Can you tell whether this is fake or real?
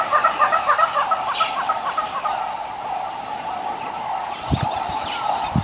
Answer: fake